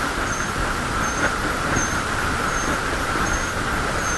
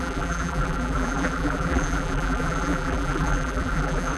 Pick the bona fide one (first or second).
first